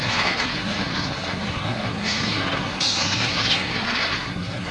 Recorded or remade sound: remade